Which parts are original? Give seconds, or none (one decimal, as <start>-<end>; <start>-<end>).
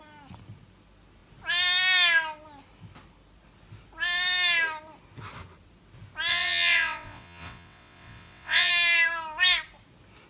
0.0-6.3; 8.7-10.3